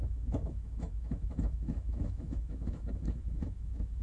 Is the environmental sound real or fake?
fake